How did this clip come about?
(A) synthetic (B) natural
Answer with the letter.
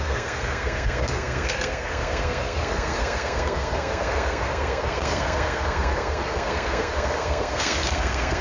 A